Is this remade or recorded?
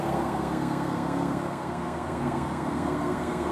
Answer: remade